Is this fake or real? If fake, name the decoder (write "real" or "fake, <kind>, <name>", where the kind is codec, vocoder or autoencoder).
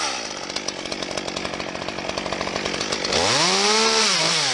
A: real